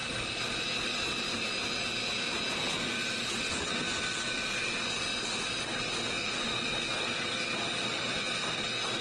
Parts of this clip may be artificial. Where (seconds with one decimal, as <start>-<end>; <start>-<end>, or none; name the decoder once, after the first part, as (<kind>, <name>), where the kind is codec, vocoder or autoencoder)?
none